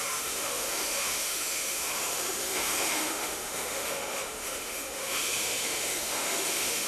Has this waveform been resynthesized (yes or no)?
yes